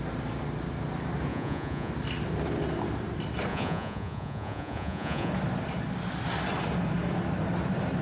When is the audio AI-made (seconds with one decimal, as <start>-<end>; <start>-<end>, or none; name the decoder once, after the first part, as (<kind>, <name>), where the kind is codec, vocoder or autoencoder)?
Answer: 1.3-1.9 (vocoder, Vocos); 3.5-5.3